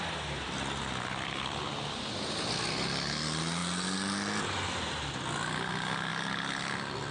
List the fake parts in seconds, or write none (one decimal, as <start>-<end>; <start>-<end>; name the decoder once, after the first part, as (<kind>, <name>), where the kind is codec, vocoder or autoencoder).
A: none